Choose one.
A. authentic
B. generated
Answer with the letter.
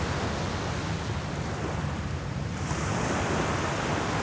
A